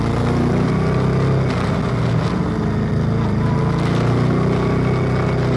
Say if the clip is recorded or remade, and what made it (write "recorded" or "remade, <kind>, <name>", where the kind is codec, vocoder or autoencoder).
recorded